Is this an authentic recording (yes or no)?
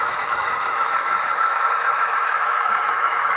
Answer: no